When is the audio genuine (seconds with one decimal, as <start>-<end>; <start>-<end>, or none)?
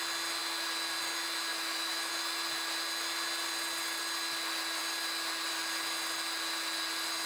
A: 0.0-1.5; 2.1-7.3